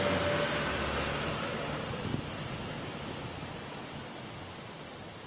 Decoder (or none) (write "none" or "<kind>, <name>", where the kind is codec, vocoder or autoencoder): none